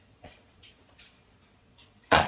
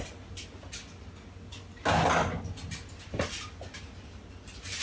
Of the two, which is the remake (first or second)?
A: first